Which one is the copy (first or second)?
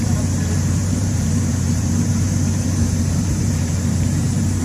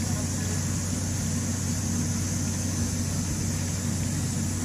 first